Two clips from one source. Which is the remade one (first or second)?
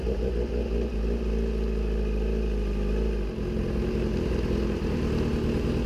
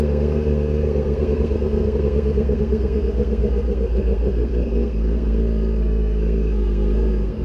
second